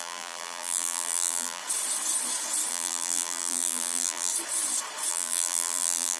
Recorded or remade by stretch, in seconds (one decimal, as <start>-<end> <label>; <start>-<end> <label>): 0.0-1.6 remade; 1.6-2.7 recorded; 2.7-4.3 remade; 4.3-5.1 recorded; 5.1-6.2 remade